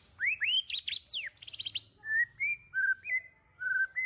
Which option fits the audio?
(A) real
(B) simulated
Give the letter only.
A